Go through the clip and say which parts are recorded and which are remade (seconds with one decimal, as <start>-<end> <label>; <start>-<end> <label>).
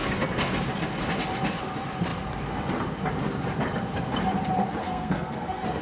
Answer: 0.0-4.8 recorded; 4.8-5.8 remade